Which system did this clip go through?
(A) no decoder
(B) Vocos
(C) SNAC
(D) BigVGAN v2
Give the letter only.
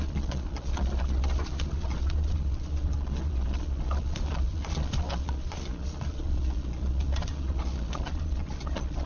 B